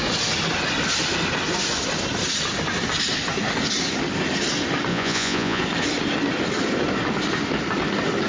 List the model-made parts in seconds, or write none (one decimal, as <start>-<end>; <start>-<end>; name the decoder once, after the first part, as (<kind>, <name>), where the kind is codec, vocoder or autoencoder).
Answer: 4.9-5.6 (vocoder, Vocos)